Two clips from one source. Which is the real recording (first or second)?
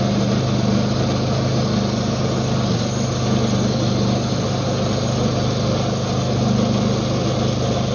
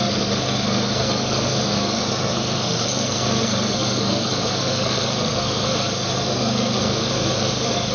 first